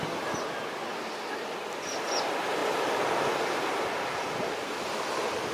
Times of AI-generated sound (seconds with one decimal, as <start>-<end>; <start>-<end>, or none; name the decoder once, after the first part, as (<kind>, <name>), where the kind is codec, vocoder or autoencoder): none